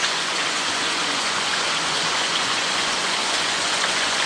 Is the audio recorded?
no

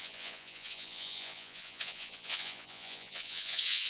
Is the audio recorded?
no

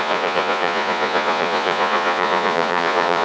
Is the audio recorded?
no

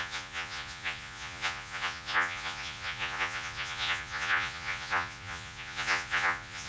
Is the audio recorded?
no